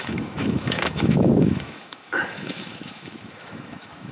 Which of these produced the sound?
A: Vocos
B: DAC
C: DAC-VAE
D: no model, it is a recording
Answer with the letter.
C